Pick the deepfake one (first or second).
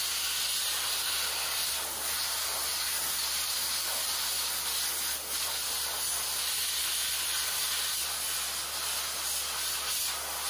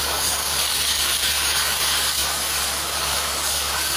second